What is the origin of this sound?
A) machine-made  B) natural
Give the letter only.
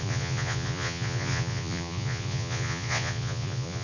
A